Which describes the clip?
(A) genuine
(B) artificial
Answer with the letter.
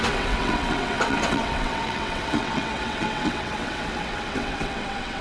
B